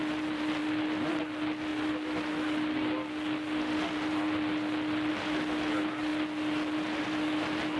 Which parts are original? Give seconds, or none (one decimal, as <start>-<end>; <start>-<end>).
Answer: 0.0-7.8